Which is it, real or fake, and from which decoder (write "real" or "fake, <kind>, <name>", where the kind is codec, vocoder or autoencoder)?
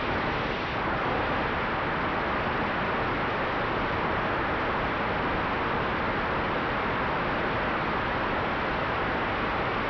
real